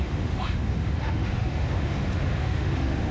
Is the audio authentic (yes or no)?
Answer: no